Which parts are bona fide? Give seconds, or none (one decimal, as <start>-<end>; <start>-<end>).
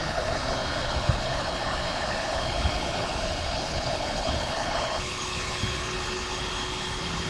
none